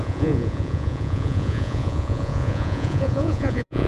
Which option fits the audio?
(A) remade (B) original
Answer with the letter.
A